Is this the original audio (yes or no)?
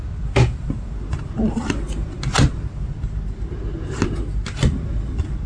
yes